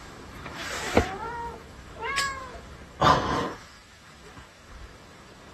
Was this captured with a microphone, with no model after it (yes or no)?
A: no